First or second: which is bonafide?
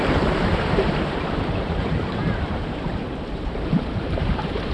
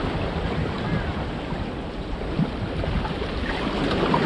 second